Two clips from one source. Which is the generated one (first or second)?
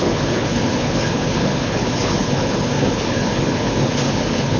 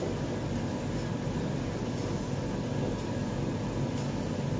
first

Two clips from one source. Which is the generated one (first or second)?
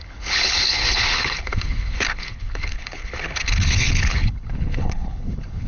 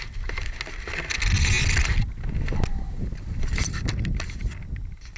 first